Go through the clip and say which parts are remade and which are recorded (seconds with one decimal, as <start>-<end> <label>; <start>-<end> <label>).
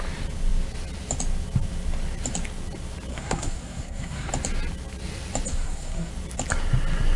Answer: 0.0-3.1 recorded; 3.1-4.3 remade; 4.3-5.5 recorded; 5.5-6.1 remade; 6.1-7.2 recorded